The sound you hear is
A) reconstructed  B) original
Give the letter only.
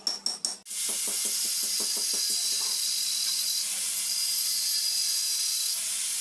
B